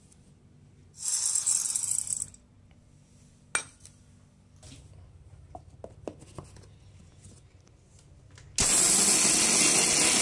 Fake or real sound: real